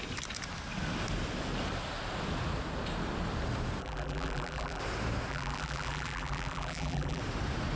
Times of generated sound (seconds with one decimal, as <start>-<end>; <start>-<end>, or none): 3.8-4.8; 5.3-7.2